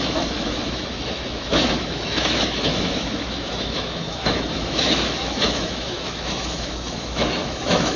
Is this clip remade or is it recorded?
remade